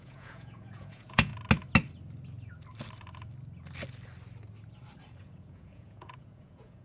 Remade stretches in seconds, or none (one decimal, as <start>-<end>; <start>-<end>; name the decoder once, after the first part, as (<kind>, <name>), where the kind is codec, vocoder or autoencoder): 0.0-1.3 (vocoder, Vocos); 5.2-6.8